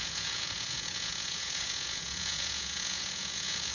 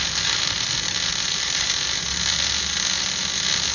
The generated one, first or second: first